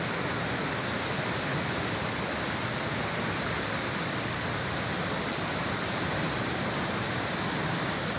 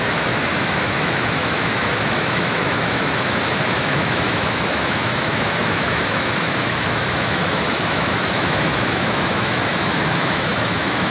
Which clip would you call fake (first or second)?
second